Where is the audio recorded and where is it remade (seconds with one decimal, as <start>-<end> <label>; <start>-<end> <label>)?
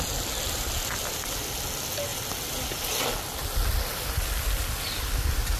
0.0-5.6 recorded